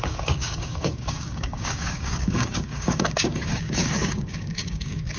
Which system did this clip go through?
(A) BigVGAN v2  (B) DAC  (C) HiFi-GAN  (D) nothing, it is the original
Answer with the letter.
B